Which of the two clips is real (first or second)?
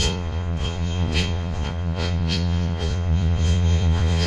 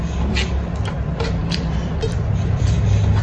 second